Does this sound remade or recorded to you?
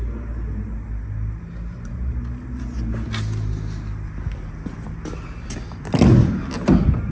recorded